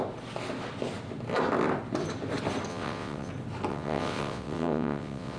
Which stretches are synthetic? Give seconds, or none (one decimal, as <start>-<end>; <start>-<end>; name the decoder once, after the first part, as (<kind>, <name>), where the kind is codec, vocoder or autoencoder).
2.7-3.3 (vocoder, WaveNeXt); 3.7-5.4